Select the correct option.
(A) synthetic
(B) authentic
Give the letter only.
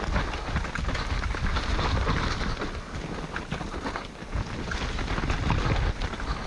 B